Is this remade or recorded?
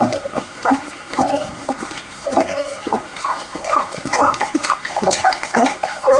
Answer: remade